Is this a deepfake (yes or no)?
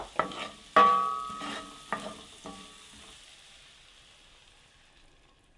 no